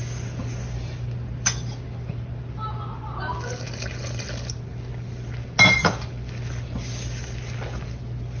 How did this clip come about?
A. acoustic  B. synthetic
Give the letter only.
A